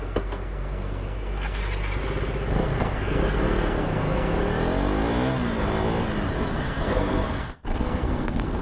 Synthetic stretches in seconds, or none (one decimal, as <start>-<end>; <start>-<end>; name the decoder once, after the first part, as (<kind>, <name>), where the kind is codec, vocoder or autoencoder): 0.0-1.6 (codec, SNAC); 2.5-4.4; 6.5-8.6